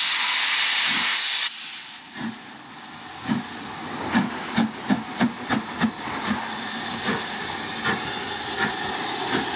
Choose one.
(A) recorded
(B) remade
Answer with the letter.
A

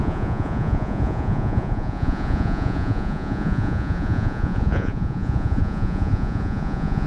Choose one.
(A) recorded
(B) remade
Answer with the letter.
B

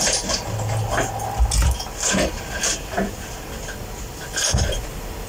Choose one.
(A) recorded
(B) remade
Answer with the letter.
A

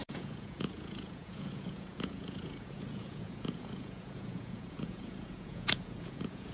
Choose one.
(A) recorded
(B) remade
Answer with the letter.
B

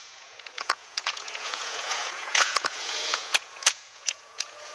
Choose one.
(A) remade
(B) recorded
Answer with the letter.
A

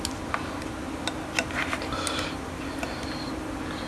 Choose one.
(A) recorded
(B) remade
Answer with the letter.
A